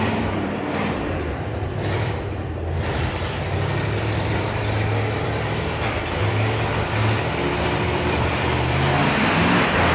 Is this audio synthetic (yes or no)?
yes